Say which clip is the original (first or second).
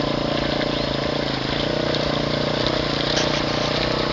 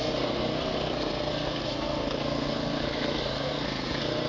first